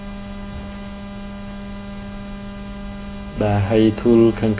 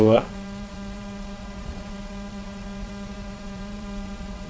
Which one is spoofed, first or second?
second